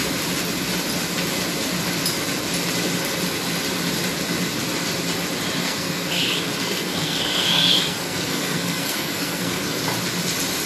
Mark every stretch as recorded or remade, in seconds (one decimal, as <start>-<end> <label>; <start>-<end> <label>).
0.0-5.6 recorded; 5.6-9.8 remade; 9.8-10.7 recorded